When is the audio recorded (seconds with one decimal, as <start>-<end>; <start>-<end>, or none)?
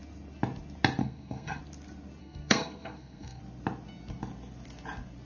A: 0.0-1.0; 1.6-2.2; 3.4-5.3